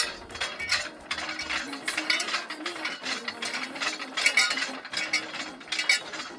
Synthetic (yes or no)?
no